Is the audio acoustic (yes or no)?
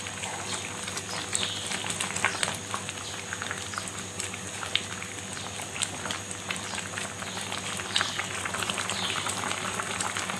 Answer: yes